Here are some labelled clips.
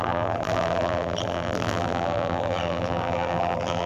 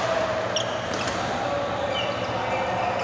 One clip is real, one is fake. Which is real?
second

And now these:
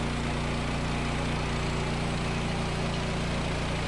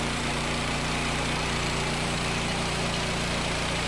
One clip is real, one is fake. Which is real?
first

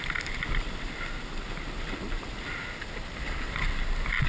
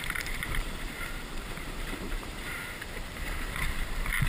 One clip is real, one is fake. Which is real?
first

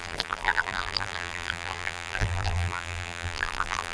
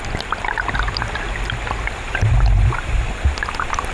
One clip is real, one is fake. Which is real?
second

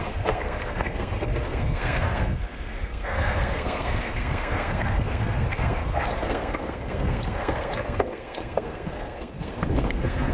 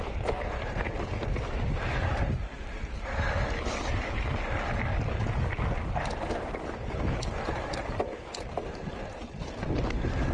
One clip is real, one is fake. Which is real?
second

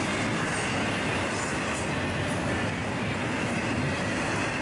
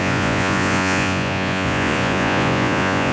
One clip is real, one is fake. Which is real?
first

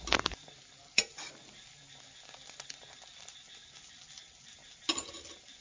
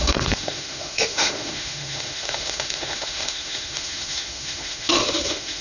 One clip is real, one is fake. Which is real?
first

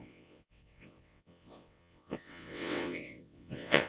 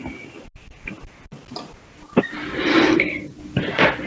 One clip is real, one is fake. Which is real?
second